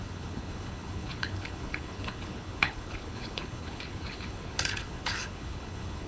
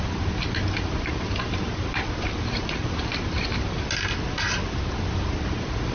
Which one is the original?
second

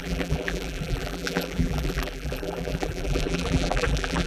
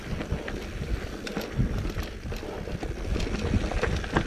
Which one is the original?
second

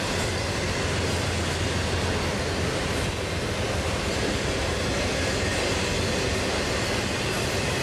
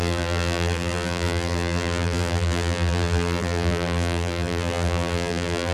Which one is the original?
first